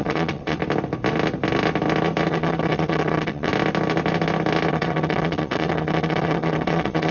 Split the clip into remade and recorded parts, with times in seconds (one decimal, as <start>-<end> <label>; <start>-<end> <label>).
0.0-0.6 remade; 0.6-2.3 recorded; 2.3-3.5 remade; 3.5-4.7 recorded; 4.7-7.1 remade